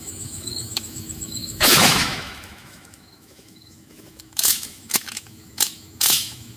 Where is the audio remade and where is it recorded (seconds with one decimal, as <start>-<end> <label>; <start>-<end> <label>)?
0.0-6.6 remade